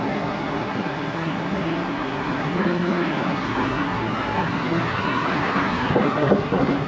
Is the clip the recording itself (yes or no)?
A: no